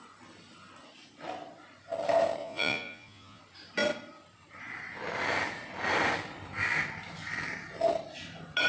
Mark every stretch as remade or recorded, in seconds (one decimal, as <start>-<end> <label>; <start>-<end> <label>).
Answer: 0.0-2.4 recorded; 2.4-3.4 remade; 3.4-8.7 recorded